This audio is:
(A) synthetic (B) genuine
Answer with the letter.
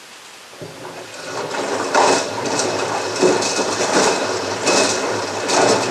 B